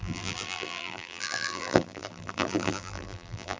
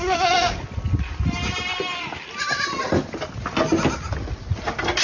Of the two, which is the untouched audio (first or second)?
second